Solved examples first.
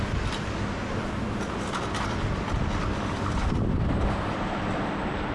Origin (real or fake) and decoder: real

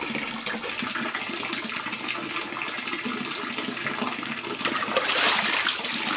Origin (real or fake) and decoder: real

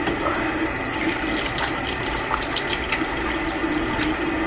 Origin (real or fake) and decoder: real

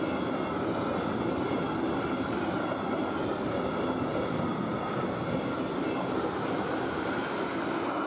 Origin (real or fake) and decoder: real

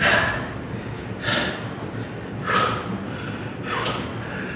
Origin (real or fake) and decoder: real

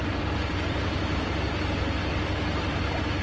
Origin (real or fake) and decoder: real